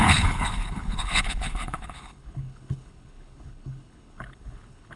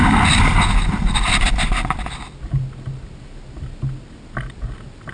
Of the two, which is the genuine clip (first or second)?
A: second